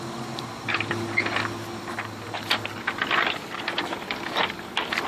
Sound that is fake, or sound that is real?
real